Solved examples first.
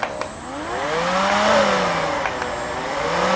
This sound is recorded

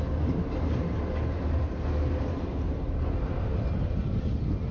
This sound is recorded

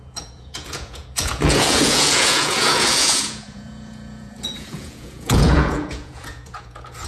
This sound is remade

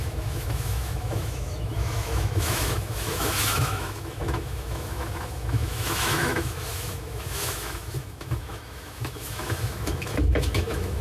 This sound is remade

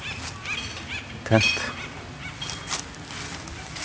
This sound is recorded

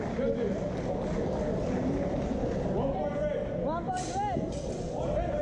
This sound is recorded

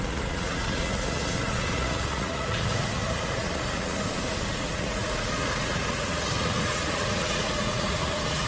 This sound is remade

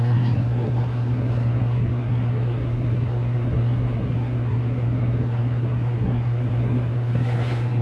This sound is remade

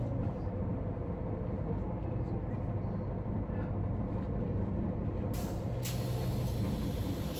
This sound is recorded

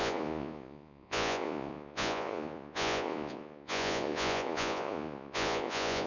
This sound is remade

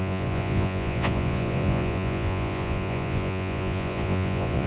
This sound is remade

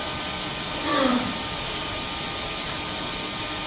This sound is recorded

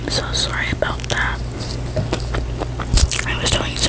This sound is recorded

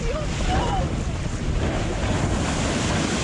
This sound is recorded